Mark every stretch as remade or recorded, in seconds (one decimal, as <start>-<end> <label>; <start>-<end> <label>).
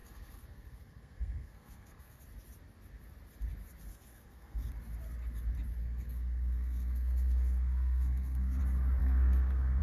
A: 0.0-2.2 remade; 2.2-3.9 recorded; 3.9-4.7 remade; 4.7-5.8 recorded; 5.8-8.6 remade; 8.6-9.0 recorded; 9.0-9.8 remade